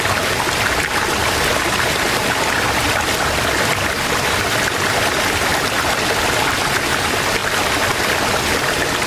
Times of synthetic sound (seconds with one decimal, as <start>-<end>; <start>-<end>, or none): none

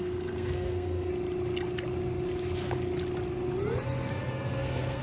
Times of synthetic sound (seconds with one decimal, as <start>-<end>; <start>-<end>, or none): 0.0-1.1; 4.1-5.0

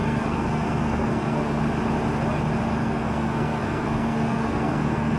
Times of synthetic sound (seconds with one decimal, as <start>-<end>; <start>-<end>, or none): 0.0-1.6; 2.7-5.2

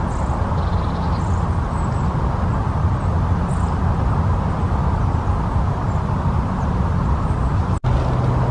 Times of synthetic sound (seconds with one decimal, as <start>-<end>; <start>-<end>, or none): none

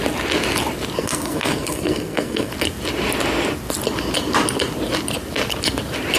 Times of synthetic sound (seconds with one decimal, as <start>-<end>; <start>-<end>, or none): 1.0-2.5